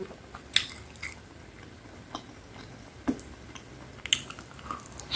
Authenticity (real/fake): real